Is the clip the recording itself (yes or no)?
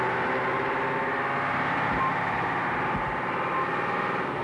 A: yes